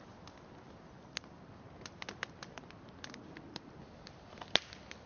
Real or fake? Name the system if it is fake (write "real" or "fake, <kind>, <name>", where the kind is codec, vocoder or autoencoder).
real